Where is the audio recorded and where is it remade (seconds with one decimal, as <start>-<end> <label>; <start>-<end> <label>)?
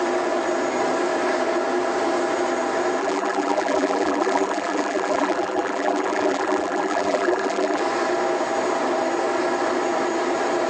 0.0-3.0 recorded; 3.0-7.8 remade; 7.8-10.7 recorded